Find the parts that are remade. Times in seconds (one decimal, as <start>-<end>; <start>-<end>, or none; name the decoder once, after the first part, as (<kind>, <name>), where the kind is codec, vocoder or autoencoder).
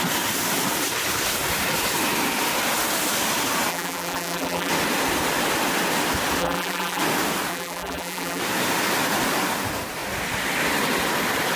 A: 3.7-4.7 (vocoder, BigVGAN v2); 6.4-7.0; 7.5-8.4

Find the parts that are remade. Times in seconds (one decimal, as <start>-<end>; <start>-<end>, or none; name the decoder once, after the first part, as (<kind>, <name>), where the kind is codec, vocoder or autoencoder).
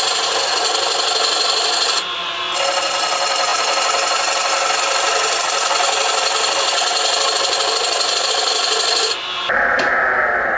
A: none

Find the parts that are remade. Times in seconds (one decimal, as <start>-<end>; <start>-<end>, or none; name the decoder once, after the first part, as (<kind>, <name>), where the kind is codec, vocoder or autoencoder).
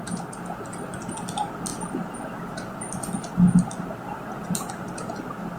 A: none